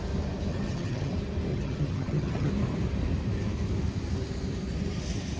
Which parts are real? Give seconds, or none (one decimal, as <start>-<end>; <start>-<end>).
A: 0.0-0.5; 1.1-1.5; 2.5-5.4